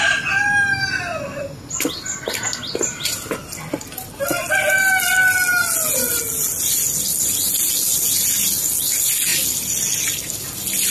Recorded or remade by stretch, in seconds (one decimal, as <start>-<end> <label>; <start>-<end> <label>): 0.0-10.9 recorded